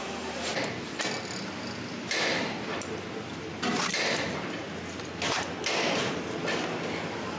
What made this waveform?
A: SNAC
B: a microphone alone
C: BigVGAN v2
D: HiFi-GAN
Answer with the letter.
B